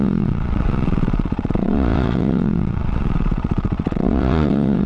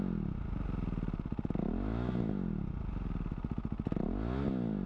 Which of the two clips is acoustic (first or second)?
second